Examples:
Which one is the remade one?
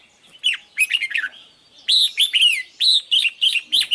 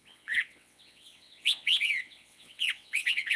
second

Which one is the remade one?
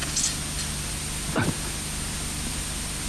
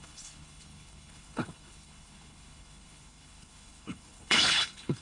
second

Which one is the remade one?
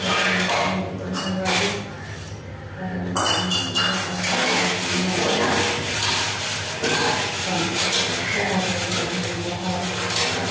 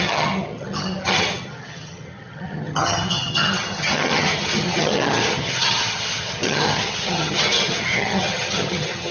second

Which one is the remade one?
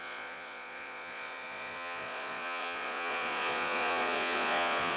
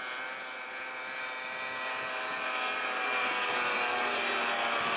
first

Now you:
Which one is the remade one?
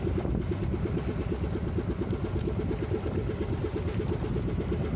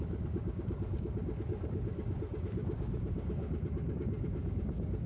second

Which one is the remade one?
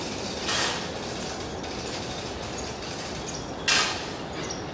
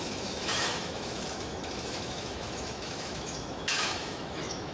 second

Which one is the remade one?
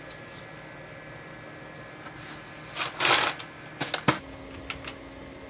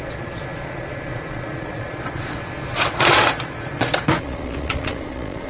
second